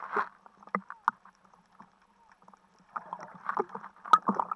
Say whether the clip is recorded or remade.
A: recorded